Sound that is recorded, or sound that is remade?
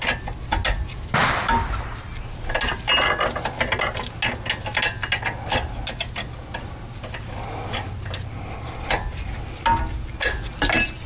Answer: recorded